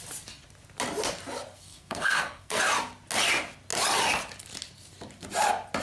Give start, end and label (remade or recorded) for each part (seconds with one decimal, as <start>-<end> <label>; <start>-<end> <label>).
0.0-1.5 recorded; 1.5-2.6 remade; 2.6-5.8 recorded